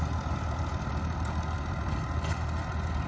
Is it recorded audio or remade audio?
recorded